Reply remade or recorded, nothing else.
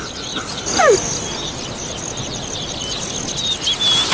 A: recorded